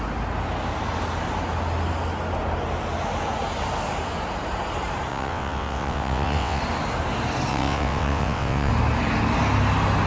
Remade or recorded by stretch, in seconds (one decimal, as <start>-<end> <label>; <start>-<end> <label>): 0.0-5.1 recorded; 5.1-6.6 remade; 6.6-7.5 recorded; 7.5-8.7 remade; 8.7-10.1 recorded